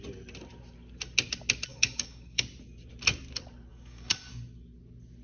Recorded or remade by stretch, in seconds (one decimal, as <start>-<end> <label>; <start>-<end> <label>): 0.0-1.7 recorded; 1.7-2.4 remade; 2.4-3.7 recorded; 3.7-4.3 remade; 4.3-5.2 recorded